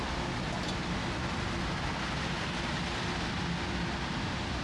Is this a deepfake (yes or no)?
no